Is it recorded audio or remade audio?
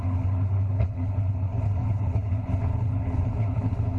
remade